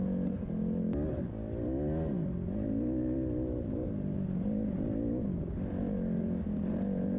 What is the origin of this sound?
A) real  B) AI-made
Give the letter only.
A